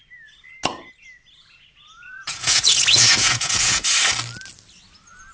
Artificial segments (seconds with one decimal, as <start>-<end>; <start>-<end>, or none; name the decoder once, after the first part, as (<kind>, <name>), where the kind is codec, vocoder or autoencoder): 1.4-3.8 (vocoder, Vocos)